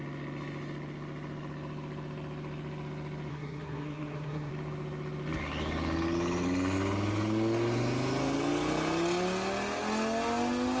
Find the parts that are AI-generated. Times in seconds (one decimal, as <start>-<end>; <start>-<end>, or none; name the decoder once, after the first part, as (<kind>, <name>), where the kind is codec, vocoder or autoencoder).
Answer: 3.3-4.5 (codec, SNAC)

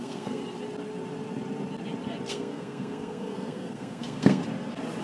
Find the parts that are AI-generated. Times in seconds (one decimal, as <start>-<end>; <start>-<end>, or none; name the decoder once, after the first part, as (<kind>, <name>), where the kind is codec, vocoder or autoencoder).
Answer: 0.0-0.4 (codec, SNAC); 2.3-4.4

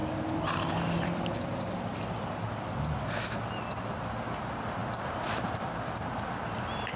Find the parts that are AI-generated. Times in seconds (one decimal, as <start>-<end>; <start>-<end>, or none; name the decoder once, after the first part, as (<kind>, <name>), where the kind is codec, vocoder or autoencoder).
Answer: none